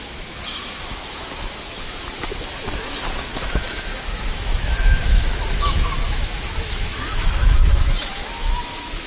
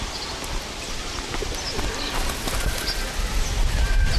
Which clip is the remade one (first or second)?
first